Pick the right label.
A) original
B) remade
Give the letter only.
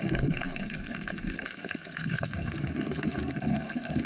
B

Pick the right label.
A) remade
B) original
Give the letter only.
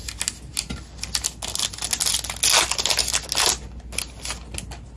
B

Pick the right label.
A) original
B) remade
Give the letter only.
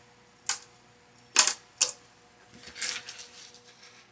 A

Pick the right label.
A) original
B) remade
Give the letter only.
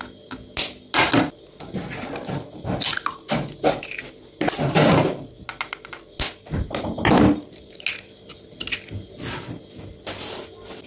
A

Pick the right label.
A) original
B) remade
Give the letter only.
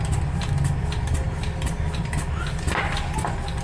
A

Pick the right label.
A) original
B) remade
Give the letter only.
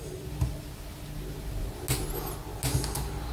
A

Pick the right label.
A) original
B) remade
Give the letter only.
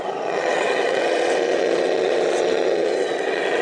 B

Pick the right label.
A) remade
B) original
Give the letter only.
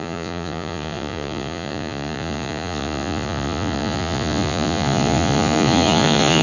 A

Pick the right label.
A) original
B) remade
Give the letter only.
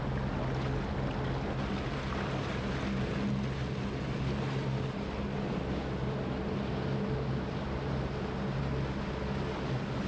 A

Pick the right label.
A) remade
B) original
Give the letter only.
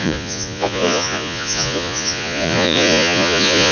A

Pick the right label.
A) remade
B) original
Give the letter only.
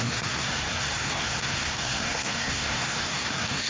A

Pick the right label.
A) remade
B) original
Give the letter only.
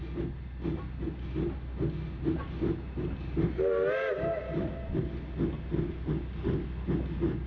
B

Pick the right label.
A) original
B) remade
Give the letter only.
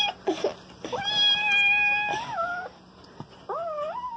A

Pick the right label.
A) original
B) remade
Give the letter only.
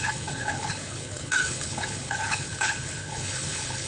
B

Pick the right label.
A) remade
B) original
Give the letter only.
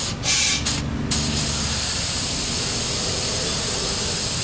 B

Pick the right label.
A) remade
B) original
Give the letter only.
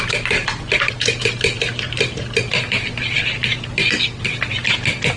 B